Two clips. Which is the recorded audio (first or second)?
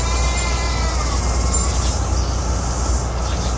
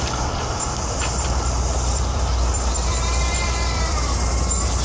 first